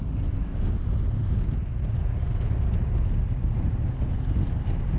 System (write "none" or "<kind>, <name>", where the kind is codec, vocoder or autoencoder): none